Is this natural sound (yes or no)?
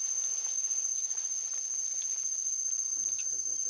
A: yes